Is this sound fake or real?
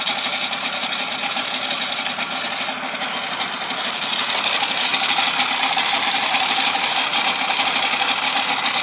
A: real